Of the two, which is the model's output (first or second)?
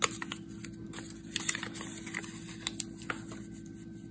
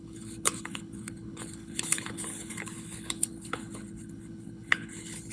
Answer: second